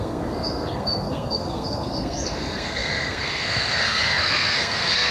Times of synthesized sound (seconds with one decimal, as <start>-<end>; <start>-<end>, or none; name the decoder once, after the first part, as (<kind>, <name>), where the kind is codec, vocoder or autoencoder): 0.0-5.1 (codec, SNAC)